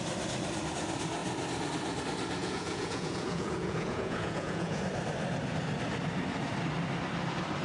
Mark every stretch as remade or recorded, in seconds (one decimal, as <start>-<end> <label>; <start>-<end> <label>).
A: 0.0-2.4 recorded; 2.4-4.8 remade; 4.8-7.6 recorded